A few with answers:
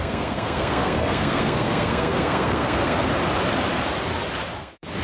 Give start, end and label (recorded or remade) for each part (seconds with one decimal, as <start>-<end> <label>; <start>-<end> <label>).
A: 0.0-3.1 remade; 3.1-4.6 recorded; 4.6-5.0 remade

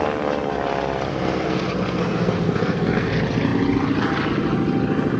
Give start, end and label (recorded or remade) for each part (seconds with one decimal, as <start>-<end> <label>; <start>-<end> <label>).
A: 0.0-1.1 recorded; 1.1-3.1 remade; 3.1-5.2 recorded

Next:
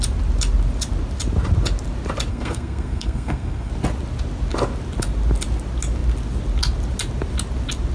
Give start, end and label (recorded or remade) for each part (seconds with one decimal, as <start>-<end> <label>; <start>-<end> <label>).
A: 0.0-2.3 recorded; 2.3-3.7 remade; 3.7-7.9 recorded

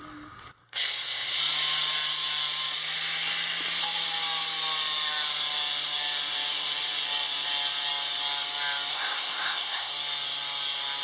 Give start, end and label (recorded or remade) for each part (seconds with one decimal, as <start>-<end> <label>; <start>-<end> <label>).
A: 0.0-0.6 recorded; 0.6-1.4 remade; 1.4-8.9 recorded; 8.9-9.9 remade; 9.9-11.0 recorded

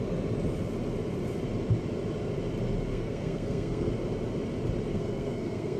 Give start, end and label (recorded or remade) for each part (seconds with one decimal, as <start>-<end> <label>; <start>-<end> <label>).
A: 0.0-2.9 recorded; 2.9-3.9 remade; 3.9-4.9 recorded; 4.9-5.8 remade